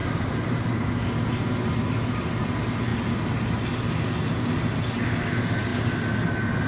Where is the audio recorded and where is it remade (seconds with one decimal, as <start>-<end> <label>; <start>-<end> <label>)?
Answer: 0.0-0.9 remade; 0.9-6.7 recorded